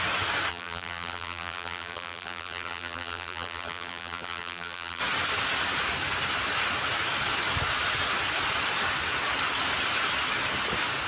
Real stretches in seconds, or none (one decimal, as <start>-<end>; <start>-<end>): 0.0-0.5; 5.0-11.1

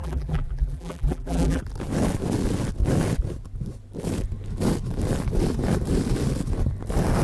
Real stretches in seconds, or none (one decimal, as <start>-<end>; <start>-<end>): 1.6-7.2